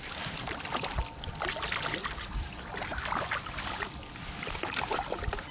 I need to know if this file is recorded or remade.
recorded